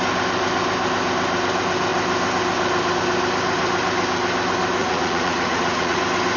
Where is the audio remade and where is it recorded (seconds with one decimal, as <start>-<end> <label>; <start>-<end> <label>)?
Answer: 0.0-4.8 recorded; 4.8-6.0 remade; 6.0-6.4 recorded